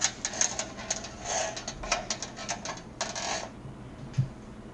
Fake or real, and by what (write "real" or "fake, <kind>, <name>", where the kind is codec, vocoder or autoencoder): real